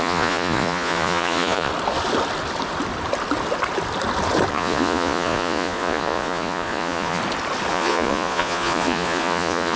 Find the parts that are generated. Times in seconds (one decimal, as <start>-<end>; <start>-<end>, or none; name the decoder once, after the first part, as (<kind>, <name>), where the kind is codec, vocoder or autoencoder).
0.0-1.7 (vocoder, Vocos); 4.5-7.2; 7.7-9.8